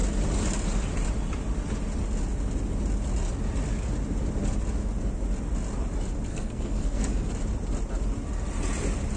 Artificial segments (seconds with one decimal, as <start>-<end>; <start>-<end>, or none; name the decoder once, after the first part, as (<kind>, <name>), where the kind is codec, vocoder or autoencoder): 6.3-7.3 (codec, SNAC)